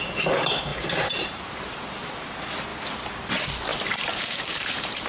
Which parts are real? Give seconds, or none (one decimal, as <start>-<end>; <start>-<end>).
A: 0.0-0.7; 2.1-3.7